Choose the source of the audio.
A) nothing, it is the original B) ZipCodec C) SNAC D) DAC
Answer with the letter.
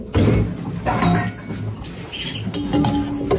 A